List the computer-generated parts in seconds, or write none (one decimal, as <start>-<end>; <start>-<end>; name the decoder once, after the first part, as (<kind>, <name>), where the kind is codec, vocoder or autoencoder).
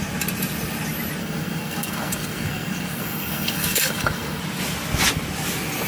1.2-4.4 (codec, SNAC)